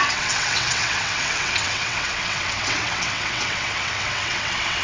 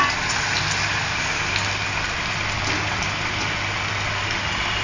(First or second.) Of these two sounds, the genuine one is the second